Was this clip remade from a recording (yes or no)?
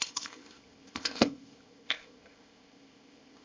yes